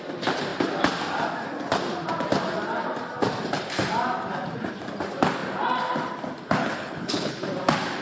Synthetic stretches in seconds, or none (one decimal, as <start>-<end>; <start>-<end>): 6.6-7.4